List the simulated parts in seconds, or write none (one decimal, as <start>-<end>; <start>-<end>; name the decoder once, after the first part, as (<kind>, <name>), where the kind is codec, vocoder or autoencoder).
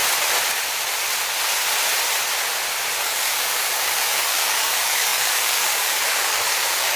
3.0-7.0 (codec, DAC)